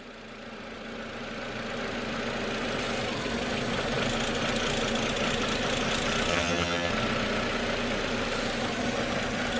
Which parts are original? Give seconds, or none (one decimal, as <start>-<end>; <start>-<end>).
0.0-6.3; 6.9-9.6